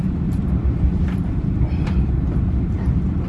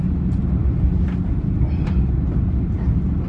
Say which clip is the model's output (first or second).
first